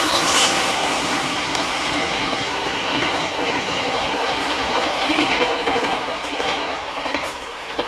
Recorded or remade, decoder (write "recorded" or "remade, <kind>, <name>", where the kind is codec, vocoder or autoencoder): remade, codec, SNAC